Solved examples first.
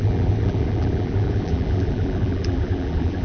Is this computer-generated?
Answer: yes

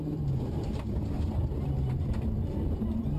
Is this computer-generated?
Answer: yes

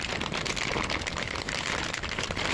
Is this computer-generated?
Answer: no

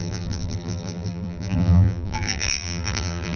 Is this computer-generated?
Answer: yes